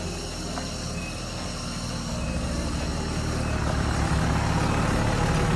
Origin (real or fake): real